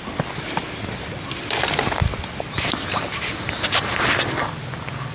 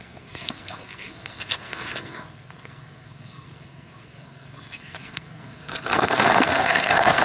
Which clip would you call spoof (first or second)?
second